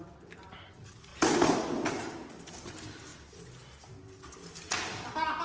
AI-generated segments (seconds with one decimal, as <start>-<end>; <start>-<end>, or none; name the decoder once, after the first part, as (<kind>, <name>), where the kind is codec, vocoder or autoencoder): none